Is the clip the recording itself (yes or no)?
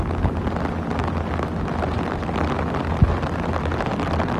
yes